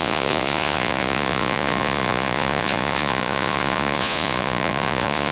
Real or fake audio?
fake